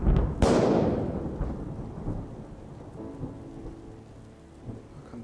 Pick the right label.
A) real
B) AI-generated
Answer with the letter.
A